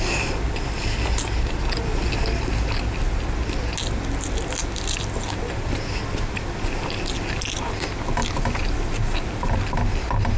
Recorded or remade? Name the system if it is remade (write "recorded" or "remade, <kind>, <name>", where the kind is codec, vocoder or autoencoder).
recorded